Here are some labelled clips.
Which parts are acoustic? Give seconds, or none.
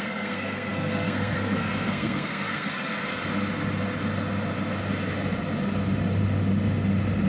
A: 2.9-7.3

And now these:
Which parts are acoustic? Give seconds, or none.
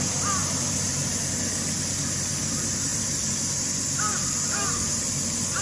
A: 0.0-2.9; 3.5-5.6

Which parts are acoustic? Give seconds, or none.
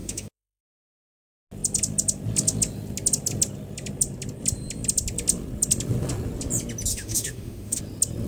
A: 0.6-6.9; 7.8-8.3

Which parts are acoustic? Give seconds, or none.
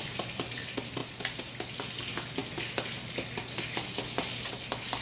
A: 0.0-5.0